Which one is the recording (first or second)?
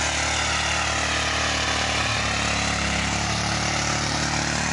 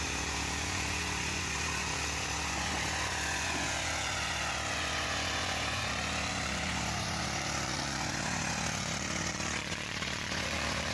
first